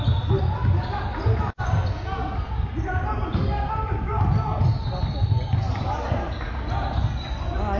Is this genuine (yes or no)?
yes